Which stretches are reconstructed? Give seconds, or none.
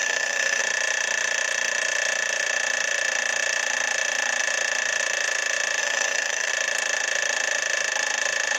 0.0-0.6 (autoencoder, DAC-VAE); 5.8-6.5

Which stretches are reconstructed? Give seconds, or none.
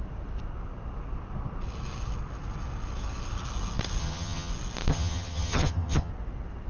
4.0-4.5 (vocoder, HiFi-GAN); 4.9-6.1